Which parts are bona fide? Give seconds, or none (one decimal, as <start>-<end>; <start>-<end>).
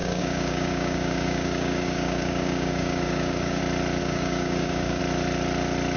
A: 3.6-4.0; 5.0-6.0